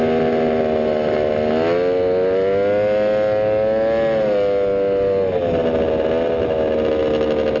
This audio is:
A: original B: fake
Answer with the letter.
A